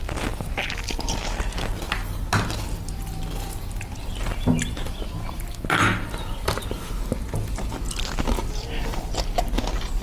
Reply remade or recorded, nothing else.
recorded